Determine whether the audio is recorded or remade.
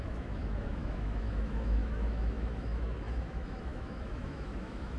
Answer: remade